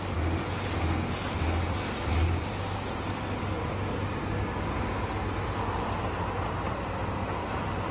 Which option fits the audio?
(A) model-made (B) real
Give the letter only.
B